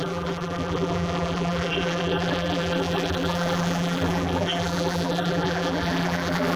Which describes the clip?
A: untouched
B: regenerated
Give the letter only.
B